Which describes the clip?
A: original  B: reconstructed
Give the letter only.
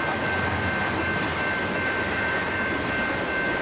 A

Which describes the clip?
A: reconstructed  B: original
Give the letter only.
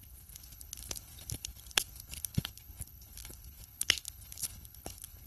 A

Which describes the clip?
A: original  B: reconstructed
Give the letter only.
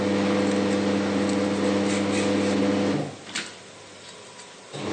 A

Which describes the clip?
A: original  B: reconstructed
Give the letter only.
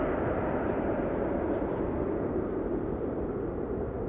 A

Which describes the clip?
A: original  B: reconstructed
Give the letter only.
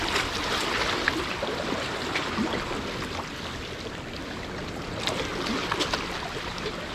A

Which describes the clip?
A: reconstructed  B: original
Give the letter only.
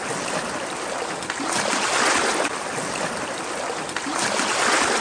B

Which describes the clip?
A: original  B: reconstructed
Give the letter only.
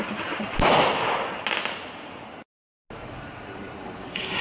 A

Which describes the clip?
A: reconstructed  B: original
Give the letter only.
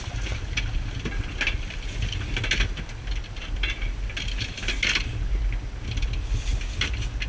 B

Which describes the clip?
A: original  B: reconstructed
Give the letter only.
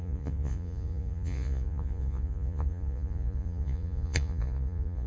B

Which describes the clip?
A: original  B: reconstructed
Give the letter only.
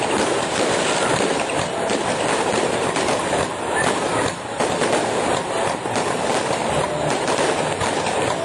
B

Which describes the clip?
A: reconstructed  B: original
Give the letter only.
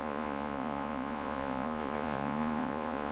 A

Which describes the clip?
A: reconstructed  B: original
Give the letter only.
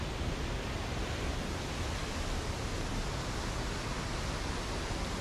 B